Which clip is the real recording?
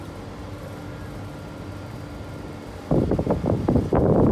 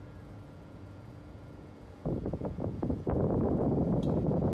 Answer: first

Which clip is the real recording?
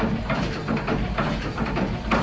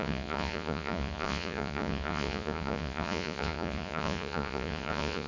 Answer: first